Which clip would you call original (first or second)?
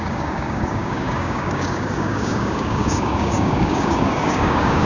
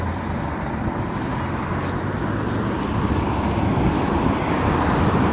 second